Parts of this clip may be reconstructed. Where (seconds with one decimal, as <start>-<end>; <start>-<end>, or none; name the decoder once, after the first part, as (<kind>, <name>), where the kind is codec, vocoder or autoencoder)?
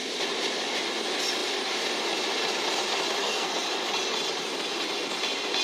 3.2-3.7 (codec, SNAC)